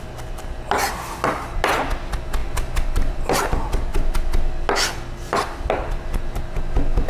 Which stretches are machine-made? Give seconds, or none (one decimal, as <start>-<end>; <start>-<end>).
2.4-3.4